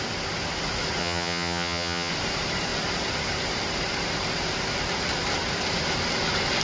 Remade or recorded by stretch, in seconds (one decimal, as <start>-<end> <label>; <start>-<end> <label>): 0.0-1.0 recorded; 1.0-2.1 remade; 2.1-6.6 recorded